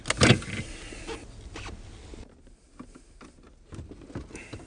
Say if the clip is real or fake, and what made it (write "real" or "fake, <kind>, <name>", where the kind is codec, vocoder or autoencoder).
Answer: real